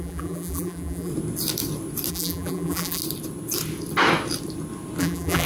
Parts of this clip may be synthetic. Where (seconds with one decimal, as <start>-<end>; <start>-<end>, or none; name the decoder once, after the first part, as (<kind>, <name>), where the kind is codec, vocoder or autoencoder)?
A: 0.0-1.1 (vocoder, BigVGAN v2); 2.1-3.0; 5.0-5.5